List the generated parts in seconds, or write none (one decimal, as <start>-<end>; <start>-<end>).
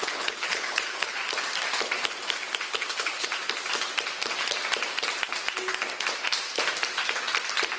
0.0-1.2; 2.7-3.3